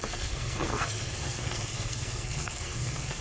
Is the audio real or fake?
fake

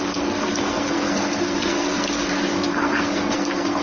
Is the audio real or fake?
fake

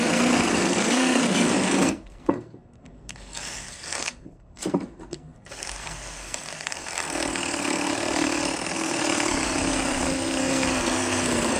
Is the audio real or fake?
fake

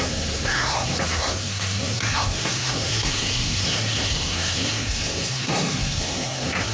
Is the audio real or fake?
fake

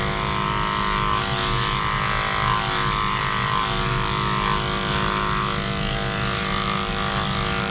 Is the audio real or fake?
real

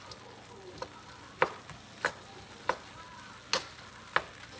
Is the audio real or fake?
real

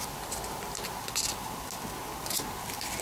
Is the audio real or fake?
real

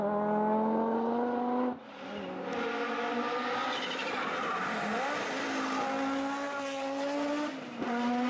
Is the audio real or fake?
real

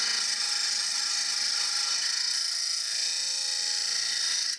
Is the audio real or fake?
real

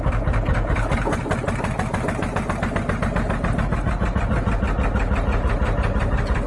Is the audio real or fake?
real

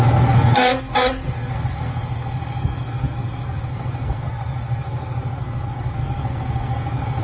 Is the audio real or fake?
fake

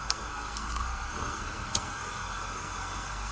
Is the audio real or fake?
fake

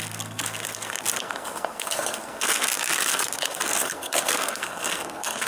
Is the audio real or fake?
fake